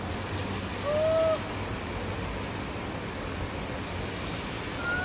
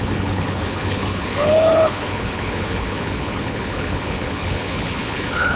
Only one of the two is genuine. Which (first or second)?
first